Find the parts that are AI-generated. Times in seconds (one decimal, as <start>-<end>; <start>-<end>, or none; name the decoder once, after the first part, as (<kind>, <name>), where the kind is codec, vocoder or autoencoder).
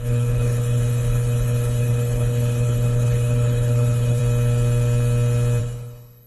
0.0-4.2 (codec, HILCodec); 5.6-6.3